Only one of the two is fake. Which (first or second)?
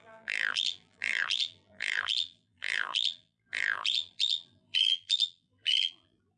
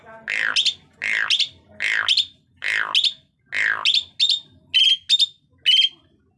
first